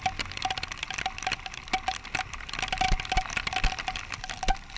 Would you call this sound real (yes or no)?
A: yes